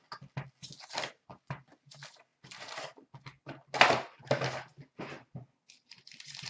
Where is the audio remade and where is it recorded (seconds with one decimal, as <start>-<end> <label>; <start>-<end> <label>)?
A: 0.0-6.5 recorded